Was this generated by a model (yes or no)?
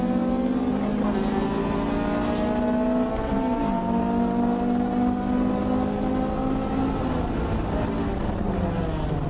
no